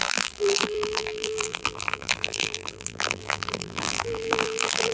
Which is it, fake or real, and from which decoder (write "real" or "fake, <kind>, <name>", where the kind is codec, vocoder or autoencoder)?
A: fake, vocoder, BigVGAN v2